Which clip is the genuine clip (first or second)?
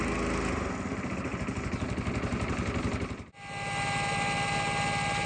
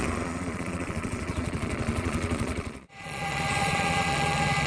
first